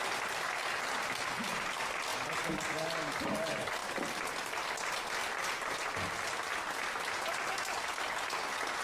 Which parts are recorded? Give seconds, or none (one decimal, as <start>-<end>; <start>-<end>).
0.0-8.8